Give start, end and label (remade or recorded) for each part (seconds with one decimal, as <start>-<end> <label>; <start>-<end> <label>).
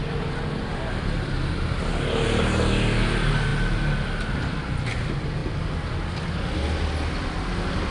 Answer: 0.0-7.9 recorded